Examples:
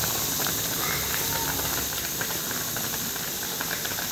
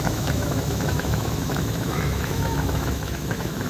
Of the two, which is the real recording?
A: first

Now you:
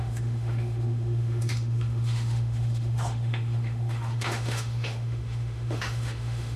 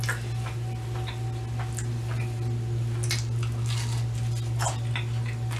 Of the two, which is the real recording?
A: second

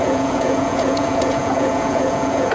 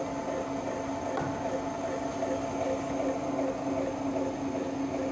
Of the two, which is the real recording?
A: second